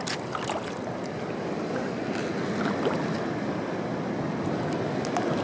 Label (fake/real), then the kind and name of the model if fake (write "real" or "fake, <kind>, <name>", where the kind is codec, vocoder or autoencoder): real